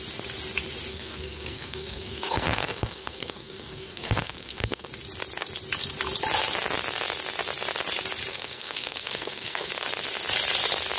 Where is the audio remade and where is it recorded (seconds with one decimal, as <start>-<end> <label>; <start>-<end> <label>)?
0.0-0.9 recorded; 0.9-4.9 remade; 4.9-8.3 recorded; 8.3-9.7 remade; 9.7-11.0 recorded